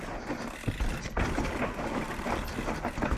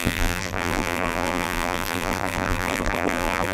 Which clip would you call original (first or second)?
first